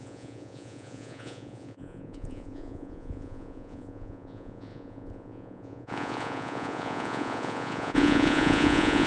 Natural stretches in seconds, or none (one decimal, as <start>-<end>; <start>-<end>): none